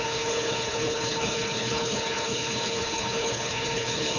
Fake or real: fake